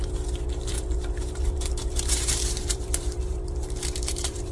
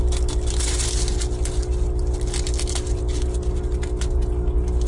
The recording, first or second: second